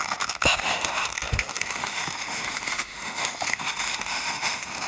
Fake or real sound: fake